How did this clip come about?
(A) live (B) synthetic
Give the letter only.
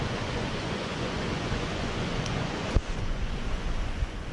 B